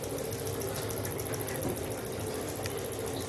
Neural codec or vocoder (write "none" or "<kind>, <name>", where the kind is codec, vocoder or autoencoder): none